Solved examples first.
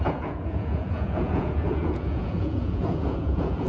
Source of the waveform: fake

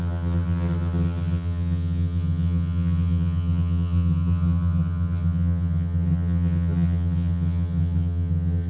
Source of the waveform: fake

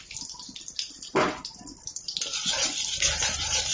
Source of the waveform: real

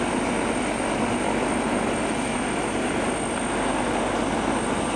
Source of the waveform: real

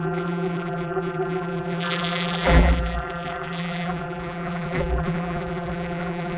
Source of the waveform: fake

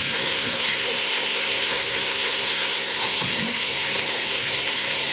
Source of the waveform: fake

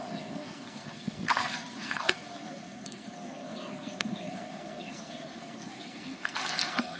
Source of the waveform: fake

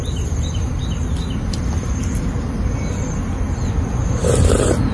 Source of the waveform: real